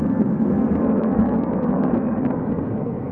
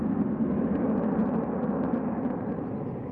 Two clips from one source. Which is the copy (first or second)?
first